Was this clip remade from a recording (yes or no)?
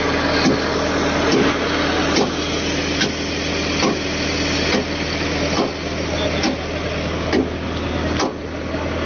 no